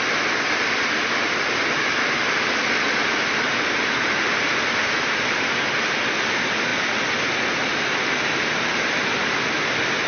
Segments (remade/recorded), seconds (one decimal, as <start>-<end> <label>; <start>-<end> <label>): 0.0-10.1 recorded